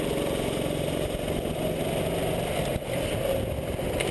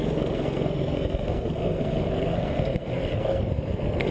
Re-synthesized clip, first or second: second